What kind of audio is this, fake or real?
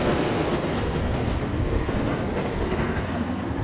fake